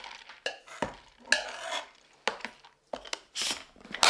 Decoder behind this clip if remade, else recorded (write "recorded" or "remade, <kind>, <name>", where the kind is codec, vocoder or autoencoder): recorded